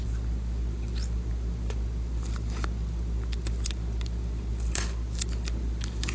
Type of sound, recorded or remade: recorded